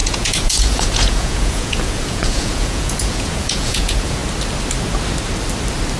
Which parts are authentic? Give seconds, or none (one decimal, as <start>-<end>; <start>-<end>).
4.2-6.0